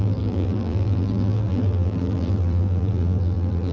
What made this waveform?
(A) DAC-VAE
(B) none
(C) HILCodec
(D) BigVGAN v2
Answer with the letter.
D